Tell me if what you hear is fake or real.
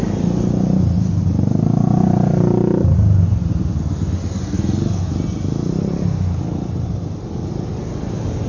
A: real